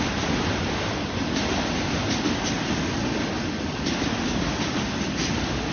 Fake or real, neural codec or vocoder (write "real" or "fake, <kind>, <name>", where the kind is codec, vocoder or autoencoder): real